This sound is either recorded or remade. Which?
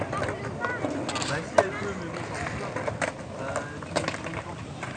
recorded